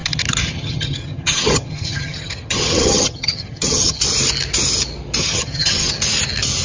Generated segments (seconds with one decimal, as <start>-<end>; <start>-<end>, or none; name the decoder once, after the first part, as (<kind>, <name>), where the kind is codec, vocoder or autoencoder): 0.0-4.0 (vocoder, HiFi-GAN); 5.2-5.9